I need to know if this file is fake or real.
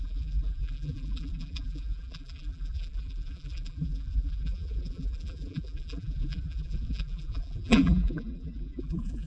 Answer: fake